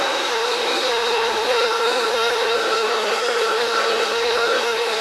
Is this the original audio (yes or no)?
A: no